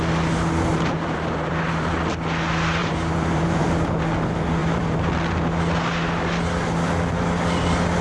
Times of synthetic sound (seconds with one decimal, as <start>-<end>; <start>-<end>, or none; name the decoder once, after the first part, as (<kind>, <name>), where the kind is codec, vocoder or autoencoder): 0.7-2.0 (vocoder, BigVGAN v2); 2.8-3.9; 4.6-5.1